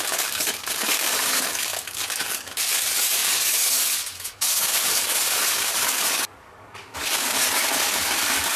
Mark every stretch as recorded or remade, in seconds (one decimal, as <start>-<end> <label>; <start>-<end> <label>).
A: 0.0-8.6 remade